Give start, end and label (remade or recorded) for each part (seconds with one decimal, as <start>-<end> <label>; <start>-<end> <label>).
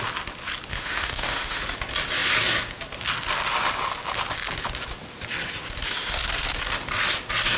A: 0.0-0.7 recorded; 0.7-1.6 remade; 1.6-7.6 recorded